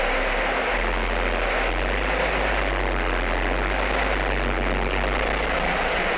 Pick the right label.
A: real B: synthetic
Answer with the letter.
A